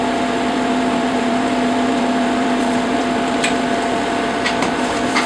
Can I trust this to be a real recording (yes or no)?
no